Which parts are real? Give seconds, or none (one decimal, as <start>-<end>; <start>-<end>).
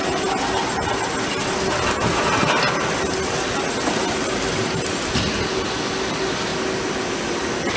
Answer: 0.0-7.8